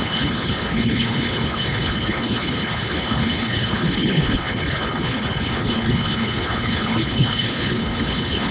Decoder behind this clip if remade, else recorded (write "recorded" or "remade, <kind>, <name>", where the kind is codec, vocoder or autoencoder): remade, codec, HILCodec